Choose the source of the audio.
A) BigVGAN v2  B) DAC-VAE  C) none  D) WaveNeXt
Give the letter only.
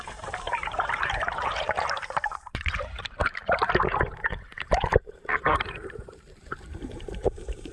A